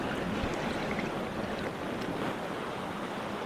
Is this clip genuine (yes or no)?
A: yes